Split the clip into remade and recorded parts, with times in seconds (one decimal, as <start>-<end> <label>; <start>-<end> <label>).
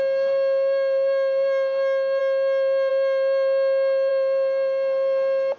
0.0-5.6 recorded